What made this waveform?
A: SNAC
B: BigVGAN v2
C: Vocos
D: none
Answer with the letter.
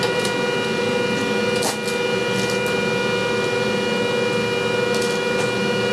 D